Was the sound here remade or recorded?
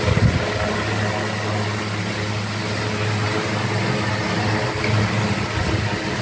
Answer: recorded